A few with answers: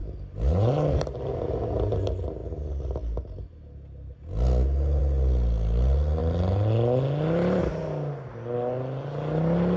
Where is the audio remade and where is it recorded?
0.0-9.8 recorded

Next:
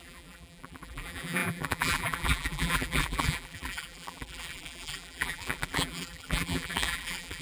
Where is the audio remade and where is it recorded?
0.0-7.4 remade

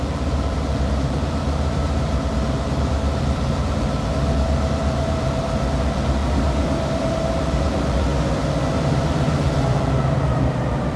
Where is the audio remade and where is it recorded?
0.0-6.2 remade; 6.2-7.0 recorded; 7.0-8.1 remade; 8.1-8.9 recorded; 8.9-11.0 remade

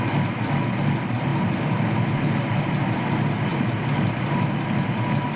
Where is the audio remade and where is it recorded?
0.0-5.4 remade